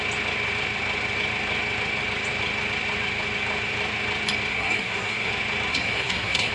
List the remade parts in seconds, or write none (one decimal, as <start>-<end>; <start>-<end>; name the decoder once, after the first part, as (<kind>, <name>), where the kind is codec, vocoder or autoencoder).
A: 4.5-5.3 (codec, SNAC); 5.7-6.5